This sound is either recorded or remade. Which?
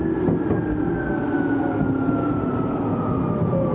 recorded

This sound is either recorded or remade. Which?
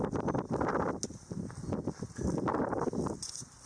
recorded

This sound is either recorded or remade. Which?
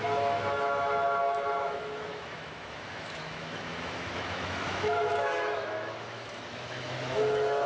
remade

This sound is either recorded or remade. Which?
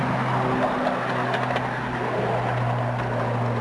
recorded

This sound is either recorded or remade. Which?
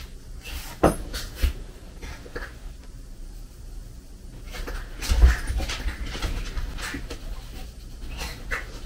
recorded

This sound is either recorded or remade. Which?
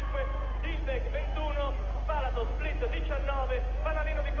recorded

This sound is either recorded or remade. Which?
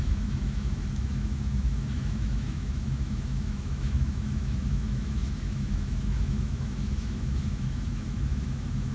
remade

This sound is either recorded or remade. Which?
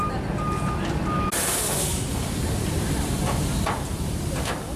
recorded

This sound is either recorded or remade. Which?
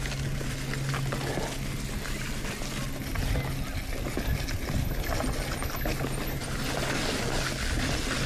recorded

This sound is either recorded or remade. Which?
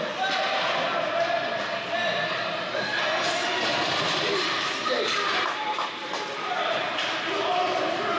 recorded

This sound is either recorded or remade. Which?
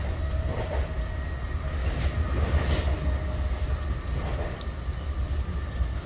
recorded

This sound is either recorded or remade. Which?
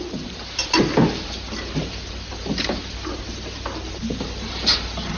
recorded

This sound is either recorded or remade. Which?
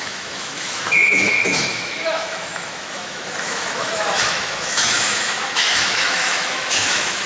remade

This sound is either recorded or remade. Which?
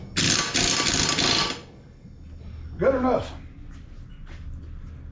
recorded